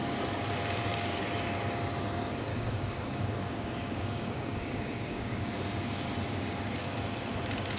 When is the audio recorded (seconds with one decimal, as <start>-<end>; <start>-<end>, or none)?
0.0-0.9; 1.5-2.5; 5.5-7.8